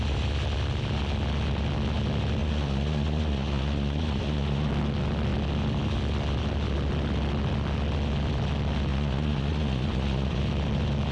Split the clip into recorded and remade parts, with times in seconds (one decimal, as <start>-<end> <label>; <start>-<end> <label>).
0.0-2.4 recorded; 2.4-4.7 remade; 4.7-8.9 recorded; 8.9-10.4 remade; 10.4-11.1 recorded